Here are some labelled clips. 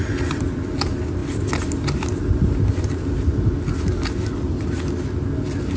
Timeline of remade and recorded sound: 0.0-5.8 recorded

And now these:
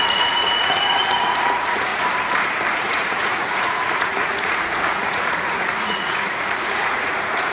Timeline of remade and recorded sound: 0.0-1.9 remade; 1.9-2.7 recorded; 2.7-7.5 remade

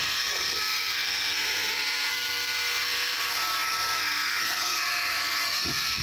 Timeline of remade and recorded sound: 0.0-6.0 remade

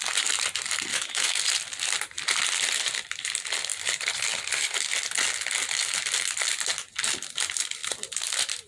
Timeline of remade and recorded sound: 0.0-0.9 recorded; 0.9-1.4 remade; 1.4-8.7 recorded

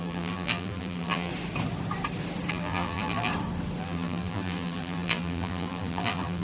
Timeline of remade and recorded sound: 0.0-1.3 remade; 1.3-2.5 recorded; 2.5-3.3 remade; 3.3-3.8 recorded; 3.8-6.4 remade

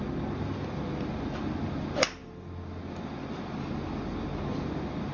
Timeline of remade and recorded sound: 0.0-5.1 recorded